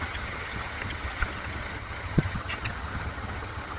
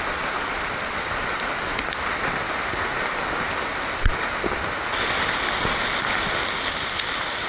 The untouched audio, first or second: second